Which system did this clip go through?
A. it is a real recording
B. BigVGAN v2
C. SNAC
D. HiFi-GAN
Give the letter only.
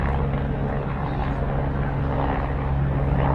A